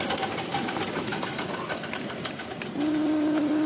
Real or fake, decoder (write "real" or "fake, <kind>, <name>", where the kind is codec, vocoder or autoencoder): real